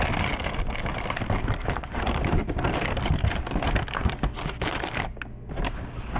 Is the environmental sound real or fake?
real